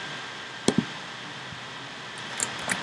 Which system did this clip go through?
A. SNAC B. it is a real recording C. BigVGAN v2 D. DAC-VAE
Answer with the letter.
B